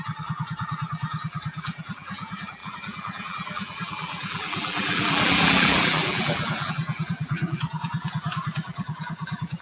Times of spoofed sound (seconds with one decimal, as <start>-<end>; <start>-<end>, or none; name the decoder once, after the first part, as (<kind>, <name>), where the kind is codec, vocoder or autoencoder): 0.0-9.6 (vocoder, BigVGAN v2)